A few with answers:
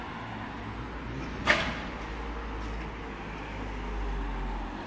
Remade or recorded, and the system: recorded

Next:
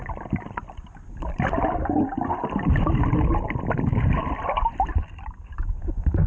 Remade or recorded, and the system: recorded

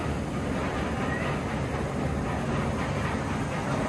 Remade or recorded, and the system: recorded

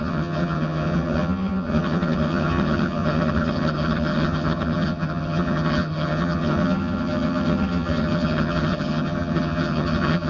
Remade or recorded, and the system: remade, vocoder, HiFi-GAN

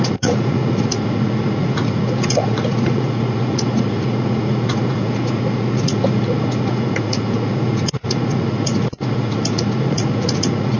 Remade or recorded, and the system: remade, vocoder, Vocos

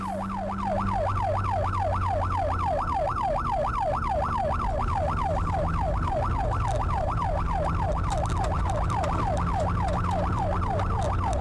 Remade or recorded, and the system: recorded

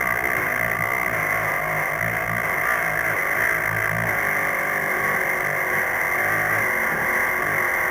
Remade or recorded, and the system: recorded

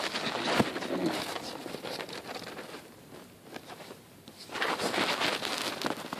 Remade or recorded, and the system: recorded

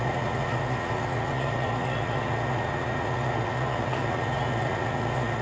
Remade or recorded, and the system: remade, vocoder, Vocos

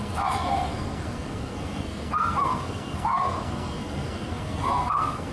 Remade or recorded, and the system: remade, codec, SNAC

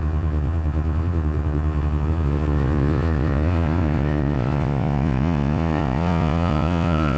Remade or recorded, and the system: remade, vocoder, Vocos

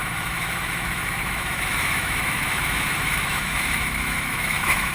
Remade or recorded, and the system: remade, autoencoder, DAC-VAE